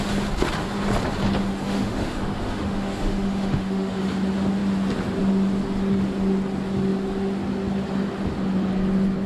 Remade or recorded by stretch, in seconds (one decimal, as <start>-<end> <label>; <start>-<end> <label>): 0.0-1.4 recorded; 1.4-4.0 remade; 4.0-9.3 recorded